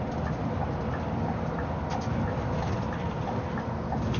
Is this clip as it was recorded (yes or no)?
yes